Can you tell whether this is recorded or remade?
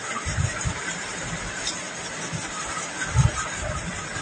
recorded